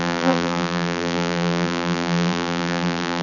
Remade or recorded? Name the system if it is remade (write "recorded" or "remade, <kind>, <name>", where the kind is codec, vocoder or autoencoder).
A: remade, vocoder, BigVGAN v2